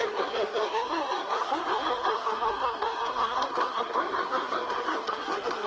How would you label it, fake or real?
fake